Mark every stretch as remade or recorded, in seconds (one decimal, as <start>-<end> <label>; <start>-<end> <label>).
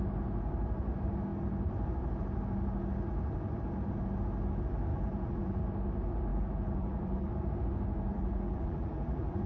0.0-4.9 recorded; 4.9-5.6 remade; 5.6-6.3 recorded; 6.3-7.3 remade; 7.3-8.1 recorded; 8.1-9.5 remade